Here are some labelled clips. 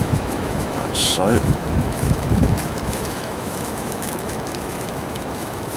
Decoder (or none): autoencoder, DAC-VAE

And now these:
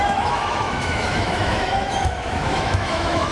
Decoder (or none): autoencoder, DAC-VAE